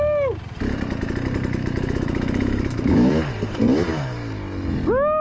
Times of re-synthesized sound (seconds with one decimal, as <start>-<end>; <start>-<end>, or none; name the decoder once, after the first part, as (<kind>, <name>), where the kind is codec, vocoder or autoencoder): 1.6-3.1 (autoencoder, DAC-VAE)